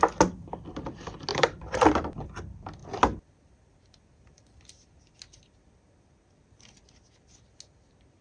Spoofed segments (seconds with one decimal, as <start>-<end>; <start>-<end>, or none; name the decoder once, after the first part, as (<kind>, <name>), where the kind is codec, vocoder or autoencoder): 1.3-2.3 (vocoder, BigVGAN v2); 2.8-5.1